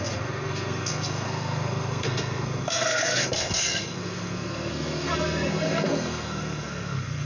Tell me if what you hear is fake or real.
fake